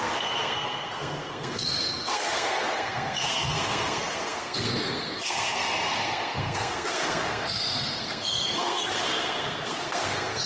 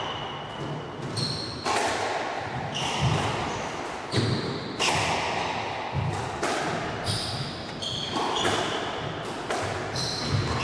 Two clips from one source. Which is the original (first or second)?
second